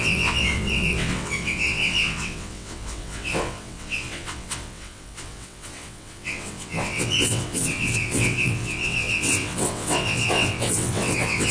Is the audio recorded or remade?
remade